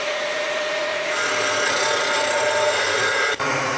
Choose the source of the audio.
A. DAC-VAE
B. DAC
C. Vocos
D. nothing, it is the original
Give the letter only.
C